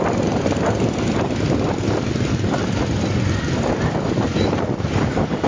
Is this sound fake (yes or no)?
yes